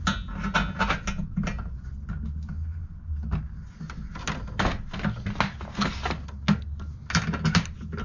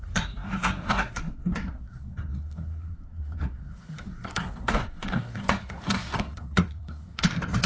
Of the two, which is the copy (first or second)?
second